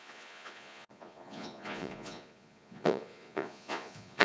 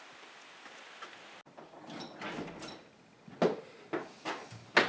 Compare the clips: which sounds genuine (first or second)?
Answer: second